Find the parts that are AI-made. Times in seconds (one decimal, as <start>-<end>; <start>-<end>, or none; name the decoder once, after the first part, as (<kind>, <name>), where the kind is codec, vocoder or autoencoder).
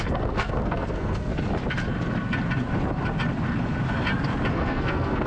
0.0-1.3 (codec, SNAC); 4.5-5.3